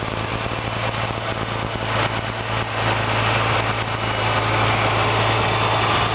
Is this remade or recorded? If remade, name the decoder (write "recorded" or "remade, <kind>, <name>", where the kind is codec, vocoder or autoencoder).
recorded